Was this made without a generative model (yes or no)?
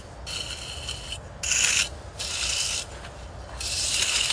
yes